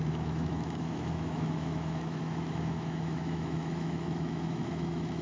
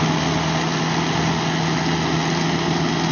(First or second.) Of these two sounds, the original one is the second